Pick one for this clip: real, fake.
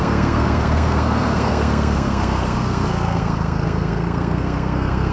fake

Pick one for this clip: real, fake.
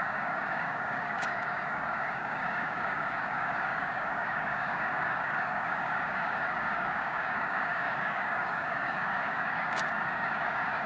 fake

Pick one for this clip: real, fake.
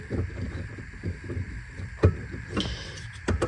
real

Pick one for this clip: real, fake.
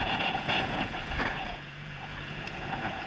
fake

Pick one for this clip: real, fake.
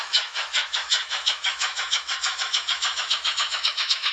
fake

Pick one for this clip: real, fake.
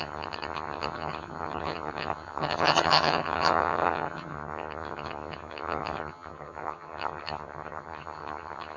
fake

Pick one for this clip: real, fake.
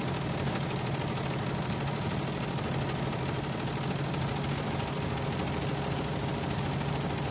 real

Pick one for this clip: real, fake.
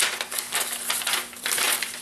real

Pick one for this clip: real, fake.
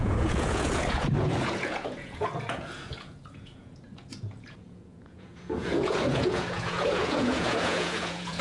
fake